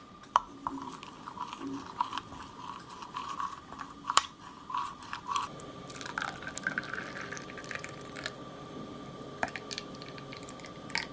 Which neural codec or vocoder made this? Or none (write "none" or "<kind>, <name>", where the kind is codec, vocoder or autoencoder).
vocoder, BigVGAN v2